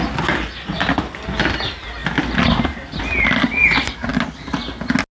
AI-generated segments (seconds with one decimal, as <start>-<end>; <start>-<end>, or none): none